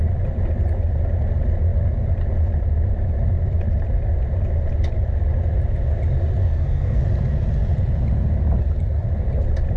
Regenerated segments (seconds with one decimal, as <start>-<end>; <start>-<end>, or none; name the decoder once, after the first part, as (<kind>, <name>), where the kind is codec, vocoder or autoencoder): 6.4-7.0 (codec, SNAC)